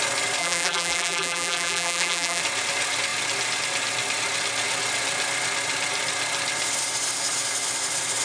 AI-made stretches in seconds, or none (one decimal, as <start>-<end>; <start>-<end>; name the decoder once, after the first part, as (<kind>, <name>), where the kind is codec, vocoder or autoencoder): 0.4-2.4 (vocoder, BigVGAN v2)